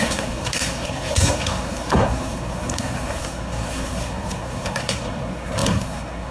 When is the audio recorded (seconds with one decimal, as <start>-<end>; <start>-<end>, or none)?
none